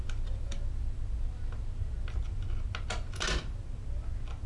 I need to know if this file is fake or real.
real